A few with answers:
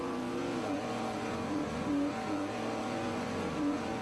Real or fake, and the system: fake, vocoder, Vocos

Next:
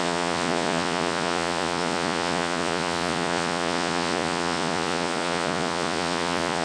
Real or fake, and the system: fake, vocoder, Vocos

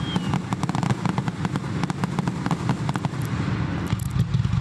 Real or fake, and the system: real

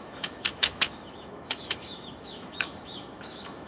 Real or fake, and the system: fake, autoencoder, DAC-VAE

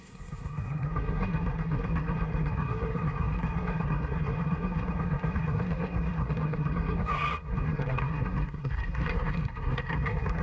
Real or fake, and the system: fake, codec, SNAC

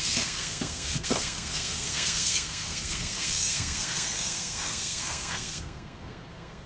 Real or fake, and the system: fake, codec, SNAC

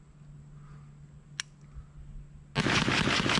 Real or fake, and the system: real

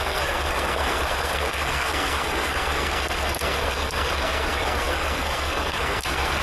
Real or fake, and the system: fake, codec, SNAC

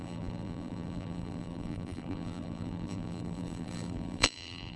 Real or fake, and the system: fake, vocoder, BigVGAN v2